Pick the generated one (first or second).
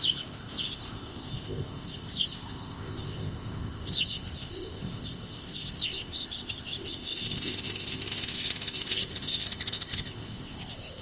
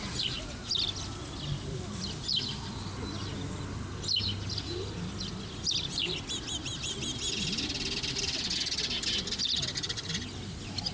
first